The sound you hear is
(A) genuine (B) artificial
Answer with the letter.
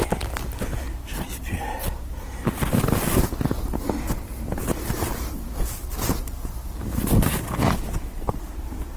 A